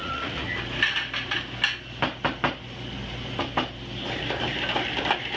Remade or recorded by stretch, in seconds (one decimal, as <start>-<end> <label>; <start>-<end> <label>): 0.0-0.6 remade; 0.6-5.4 recorded